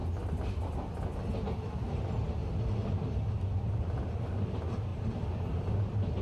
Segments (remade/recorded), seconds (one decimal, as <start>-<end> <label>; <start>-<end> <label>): 0.0-4.9 recorded; 4.9-5.6 remade; 5.6-6.2 recorded